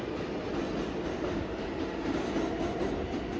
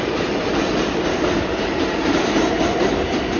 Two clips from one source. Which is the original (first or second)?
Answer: first